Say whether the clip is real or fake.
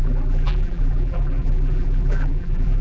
fake